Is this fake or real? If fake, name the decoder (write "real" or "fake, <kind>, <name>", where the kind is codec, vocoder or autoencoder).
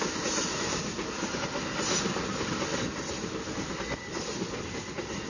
real